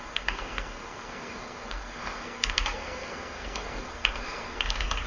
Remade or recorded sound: remade